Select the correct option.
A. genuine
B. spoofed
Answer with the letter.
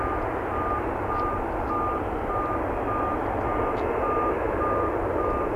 A